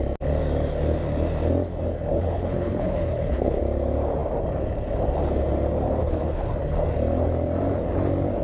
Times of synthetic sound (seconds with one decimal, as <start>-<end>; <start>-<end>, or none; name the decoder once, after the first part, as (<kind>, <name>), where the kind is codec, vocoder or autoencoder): 2.1-3.6 (codec, HILCodec); 6.0-6.5